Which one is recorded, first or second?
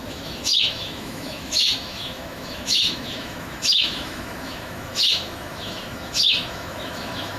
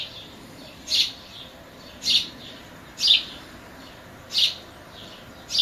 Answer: second